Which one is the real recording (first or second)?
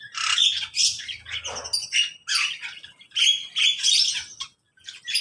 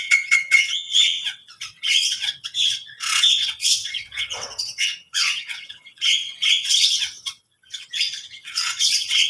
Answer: first